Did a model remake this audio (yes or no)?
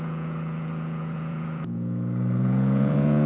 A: yes